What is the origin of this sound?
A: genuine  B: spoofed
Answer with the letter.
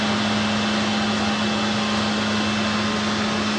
A